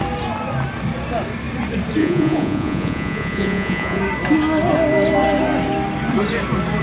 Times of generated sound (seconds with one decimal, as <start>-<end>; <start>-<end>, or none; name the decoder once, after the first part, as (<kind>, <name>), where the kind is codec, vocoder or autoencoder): 2.0-4.0 (vocoder, Vocos)